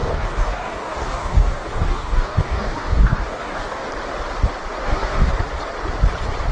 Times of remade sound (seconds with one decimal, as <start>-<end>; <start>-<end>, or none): 0.0-3.9; 4.8-5.3